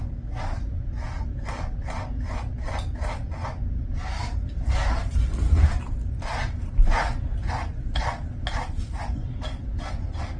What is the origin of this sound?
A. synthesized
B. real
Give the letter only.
B